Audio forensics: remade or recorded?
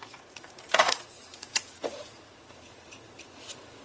remade